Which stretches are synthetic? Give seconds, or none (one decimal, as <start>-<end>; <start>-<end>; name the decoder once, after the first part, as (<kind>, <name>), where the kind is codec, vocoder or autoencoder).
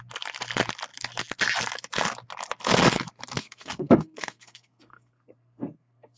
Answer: 3.4-6.2 (codec, SNAC)